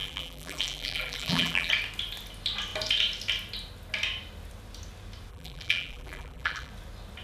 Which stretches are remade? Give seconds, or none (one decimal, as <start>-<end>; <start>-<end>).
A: 0.0-1.7; 5.3-6.7